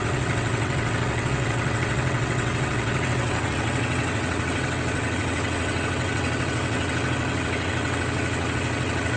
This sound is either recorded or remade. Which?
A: remade